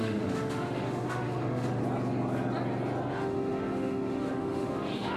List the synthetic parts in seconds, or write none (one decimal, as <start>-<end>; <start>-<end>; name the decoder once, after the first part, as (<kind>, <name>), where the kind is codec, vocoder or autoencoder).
0.0-1.8 (autoencoder, DAC-VAE); 3.1-5.2